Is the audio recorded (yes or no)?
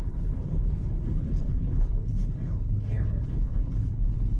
no